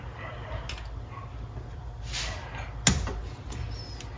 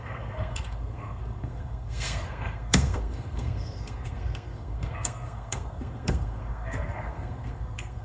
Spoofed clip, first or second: second